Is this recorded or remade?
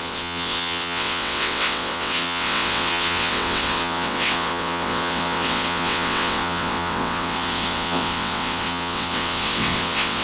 remade